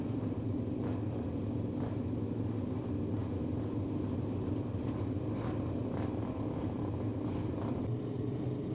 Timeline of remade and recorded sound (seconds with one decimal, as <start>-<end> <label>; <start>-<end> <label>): 0.0-8.7 recorded